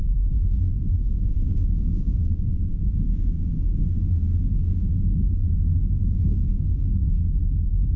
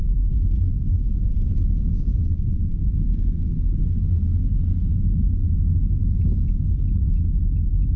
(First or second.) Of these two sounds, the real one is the second